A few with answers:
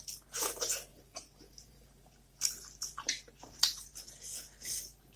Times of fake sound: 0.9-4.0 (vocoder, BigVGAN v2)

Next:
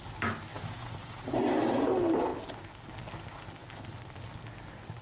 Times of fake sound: 0.5-1.9 (vocoder, BigVGAN v2); 3.6-4.2

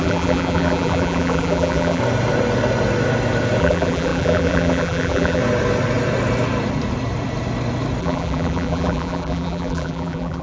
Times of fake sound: 0.0-2.0 (vocoder, BigVGAN v2); 3.6-5.4; 8.0-10.4

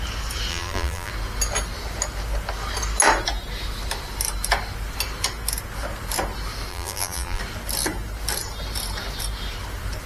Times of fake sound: 0.5-1.1 (vocoder, BigVGAN v2); 6.7-7.4

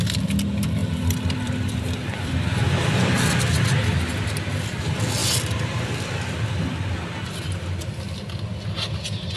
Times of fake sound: 0.8-3.4 (vocoder, BigVGAN v2)

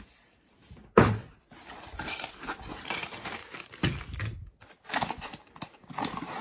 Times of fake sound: 0.0-3.4 (vocoder, BigVGAN v2); 5.2-6.4

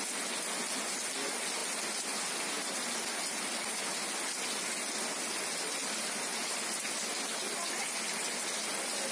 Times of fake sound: none